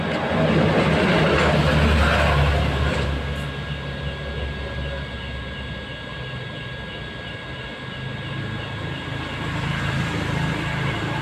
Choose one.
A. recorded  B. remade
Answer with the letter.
A